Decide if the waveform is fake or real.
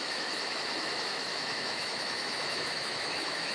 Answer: fake